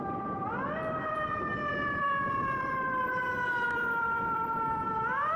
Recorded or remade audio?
remade